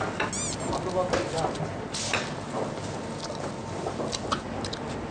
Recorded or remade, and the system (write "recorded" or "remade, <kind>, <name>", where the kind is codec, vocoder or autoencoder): recorded